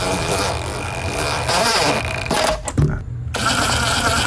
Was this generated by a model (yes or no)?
no